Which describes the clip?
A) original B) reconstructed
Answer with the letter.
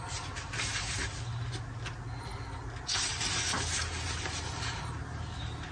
A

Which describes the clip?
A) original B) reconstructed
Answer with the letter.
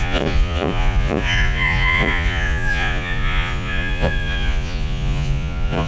B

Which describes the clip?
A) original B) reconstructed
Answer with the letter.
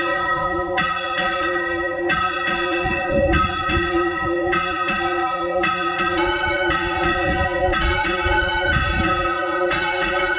B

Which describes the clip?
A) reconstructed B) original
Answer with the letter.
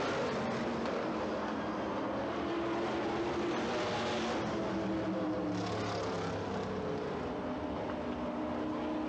B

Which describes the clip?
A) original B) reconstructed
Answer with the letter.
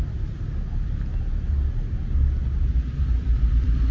A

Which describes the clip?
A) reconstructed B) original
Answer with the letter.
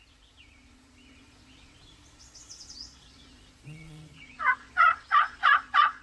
A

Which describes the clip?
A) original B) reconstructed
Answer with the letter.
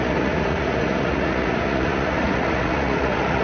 B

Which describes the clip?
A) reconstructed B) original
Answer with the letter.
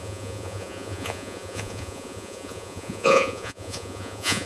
A